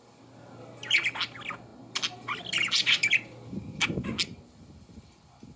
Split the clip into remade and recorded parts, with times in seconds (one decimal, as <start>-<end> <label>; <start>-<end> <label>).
0.0-5.6 recorded